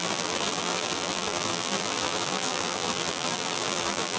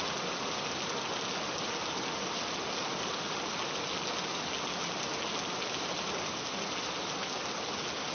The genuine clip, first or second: second